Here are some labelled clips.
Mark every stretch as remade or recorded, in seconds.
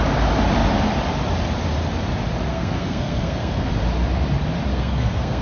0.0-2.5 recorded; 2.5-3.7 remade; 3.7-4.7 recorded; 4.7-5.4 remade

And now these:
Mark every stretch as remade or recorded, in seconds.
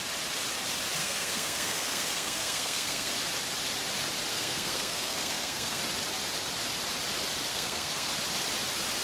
0.0-1.0 recorded; 1.0-3.1 remade; 3.1-4.3 recorded; 4.3-5.8 remade; 5.8-7.5 recorded; 7.5-8.1 remade; 8.1-9.0 recorded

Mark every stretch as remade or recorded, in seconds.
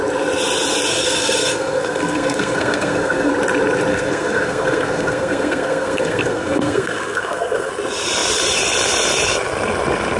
0.0-0.9 recorded; 0.9-3.3 remade; 3.3-3.9 recorded; 3.9-7.7 remade; 7.7-10.2 recorded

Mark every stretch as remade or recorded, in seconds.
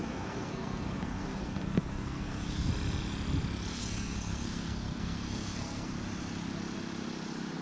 0.0-2.7 remade; 2.7-3.7 recorded; 3.7-5.9 remade; 5.9-7.6 recorded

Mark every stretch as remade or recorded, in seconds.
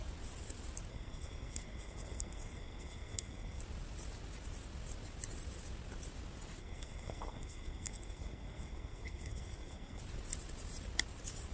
0.0-0.9 recorded; 0.9-3.6 remade; 3.6-6.6 recorded; 6.6-10.0 remade; 10.0-11.5 recorded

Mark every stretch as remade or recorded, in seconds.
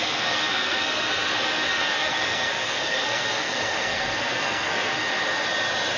0.0-4.9 remade; 4.9-6.0 recorded